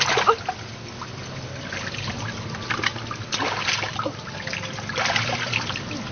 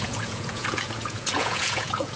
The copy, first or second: second